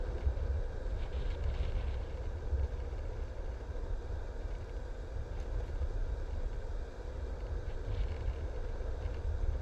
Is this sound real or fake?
real